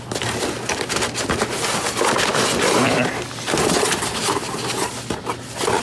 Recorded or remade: recorded